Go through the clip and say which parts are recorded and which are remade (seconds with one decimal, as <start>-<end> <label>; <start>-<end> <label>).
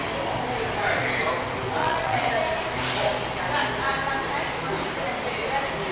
0.0-1.8 recorded; 1.8-2.3 remade; 2.3-5.9 recorded